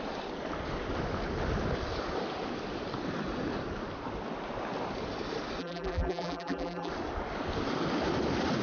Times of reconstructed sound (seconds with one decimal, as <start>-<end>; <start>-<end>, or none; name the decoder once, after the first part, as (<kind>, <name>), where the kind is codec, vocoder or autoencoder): 5.6-6.9 (vocoder, BigVGAN v2)